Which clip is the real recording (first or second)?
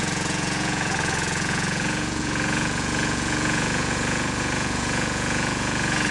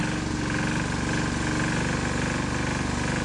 second